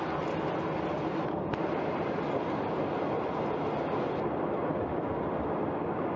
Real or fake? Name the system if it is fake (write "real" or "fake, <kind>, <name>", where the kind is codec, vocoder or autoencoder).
real